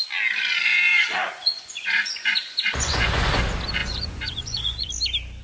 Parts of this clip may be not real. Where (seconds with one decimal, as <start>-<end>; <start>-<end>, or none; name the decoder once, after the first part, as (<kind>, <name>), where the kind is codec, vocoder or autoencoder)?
0.7-3.4 (vocoder, Vocos); 3.8-4.9